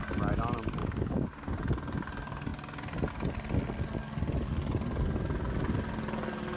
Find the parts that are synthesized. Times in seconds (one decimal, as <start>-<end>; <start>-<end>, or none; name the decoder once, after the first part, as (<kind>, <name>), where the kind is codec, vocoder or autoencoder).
0.8-1.3 (codec, DAC)